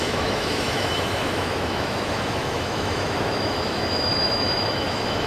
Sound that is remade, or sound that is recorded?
remade